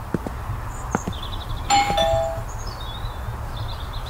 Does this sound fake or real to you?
real